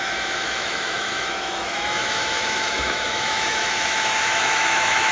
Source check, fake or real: fake